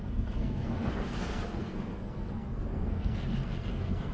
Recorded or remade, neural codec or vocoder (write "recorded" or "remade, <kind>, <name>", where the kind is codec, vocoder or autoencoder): remade, codec, SNAC